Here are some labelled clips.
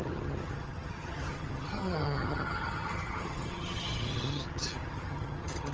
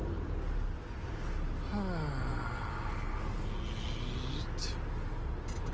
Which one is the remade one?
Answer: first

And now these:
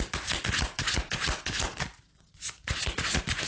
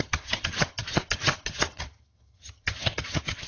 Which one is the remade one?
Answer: second